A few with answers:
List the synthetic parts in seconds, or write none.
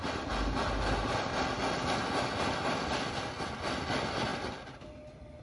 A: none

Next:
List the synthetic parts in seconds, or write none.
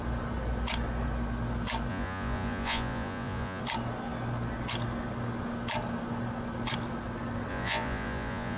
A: 1.9-3.6 (vocoder, Vocos); 7.5-8.6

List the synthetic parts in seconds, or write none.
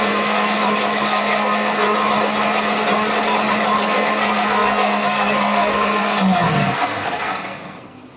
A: 0.0-1.8 (codec, SNAC); 3.8-8.2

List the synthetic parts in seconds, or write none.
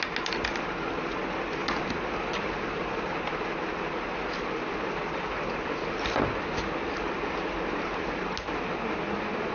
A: none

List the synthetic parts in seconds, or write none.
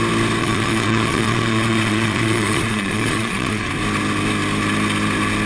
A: 0.4-3.7 (vocoder, Vocos)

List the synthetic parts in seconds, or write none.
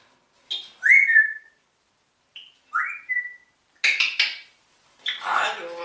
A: none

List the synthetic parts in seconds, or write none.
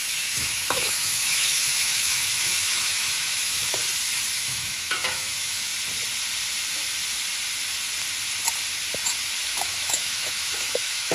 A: 0.0-3.8 (autoencoder, DAC-VAE); 4.4-5.7; 9.4-11.1